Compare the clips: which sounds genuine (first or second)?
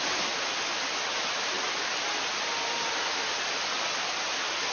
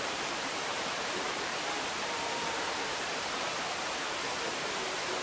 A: first